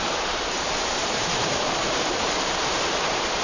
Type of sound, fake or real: fake